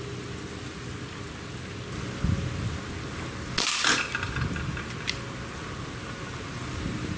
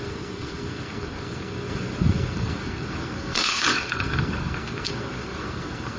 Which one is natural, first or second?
first